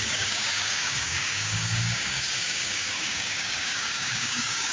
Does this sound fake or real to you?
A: fake